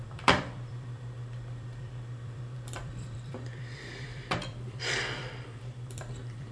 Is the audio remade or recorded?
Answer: remade